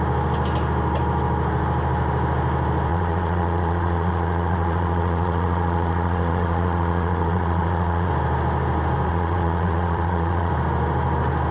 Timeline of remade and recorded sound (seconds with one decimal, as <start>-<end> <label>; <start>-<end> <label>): 0.0-2.9 recorded; 2.9-8.1 remade; 8.1-9.1 recorded; 9.1-10.5 remade; 10.5-11.5 recorded